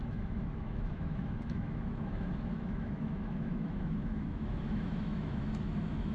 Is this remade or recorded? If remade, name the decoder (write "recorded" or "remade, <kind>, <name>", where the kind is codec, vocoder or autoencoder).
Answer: remade, autoencoder, DAC-VAE